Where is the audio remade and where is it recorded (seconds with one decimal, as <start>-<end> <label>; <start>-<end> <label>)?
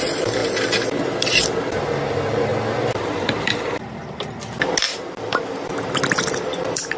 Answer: 0.0-7.0 recorded